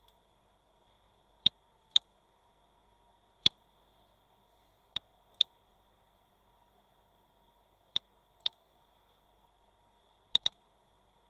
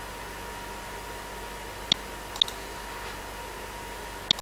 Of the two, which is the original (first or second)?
second